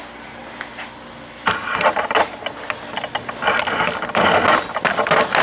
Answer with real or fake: real